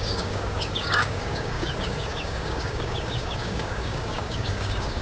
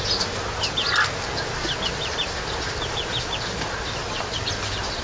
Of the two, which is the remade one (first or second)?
first